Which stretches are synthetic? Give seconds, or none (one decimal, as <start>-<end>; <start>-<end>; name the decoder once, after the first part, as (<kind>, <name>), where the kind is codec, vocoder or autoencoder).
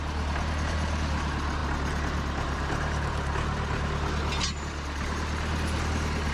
none